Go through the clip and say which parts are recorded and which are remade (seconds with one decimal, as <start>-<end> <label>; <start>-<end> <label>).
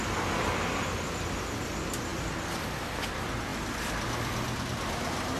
0.0-5.4 recorded